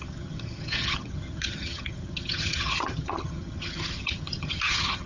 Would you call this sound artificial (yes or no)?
yes